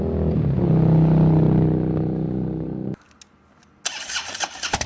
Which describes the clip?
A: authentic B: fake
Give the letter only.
A